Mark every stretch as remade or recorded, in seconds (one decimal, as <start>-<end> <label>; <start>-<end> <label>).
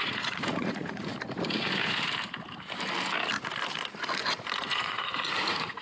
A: 0.0-1.1 remade; 1.1-4.6 recorded; 4.6-5.8 remade